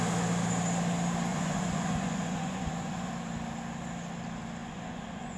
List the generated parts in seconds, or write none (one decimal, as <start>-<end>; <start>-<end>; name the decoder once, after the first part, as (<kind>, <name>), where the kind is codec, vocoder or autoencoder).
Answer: 1.3-3.1 (vocoder, Vocos); 4.6-5.4